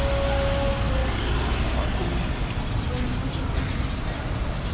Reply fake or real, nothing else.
real